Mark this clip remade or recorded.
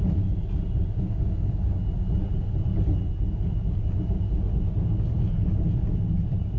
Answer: recorded